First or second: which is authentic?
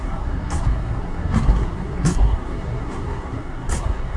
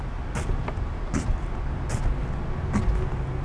second